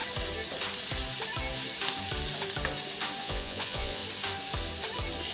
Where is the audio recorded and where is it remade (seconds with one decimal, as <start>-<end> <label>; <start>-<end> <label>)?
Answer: 0.0-3.2 recorded; 3.2-4.0 remade; 4.0-5.3 recorded

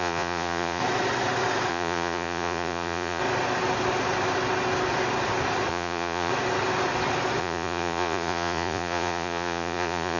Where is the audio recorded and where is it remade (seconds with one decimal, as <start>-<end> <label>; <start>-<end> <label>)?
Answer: 0.0-0.8 remade; 0.8-1.7 recorded; 1.7-3.2 remade; 3.2-5.7 recorded; 5.7-6.3 remade; 6.3-7.4 recorded; 7.4-10.2 remade